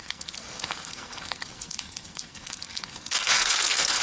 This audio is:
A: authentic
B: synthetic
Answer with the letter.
B